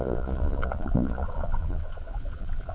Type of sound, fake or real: fake